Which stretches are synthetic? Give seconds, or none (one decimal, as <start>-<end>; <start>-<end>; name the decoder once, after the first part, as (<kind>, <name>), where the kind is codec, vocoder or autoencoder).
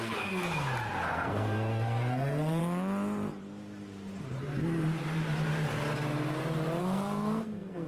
0.0-0.5 (codec, SNAC); 1.1-2.6; 6.8-7.9